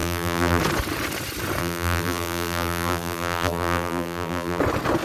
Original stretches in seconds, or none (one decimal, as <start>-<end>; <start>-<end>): 0.6-1.6; 4.6-5.0